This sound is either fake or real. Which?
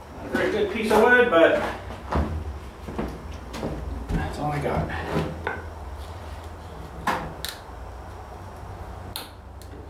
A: real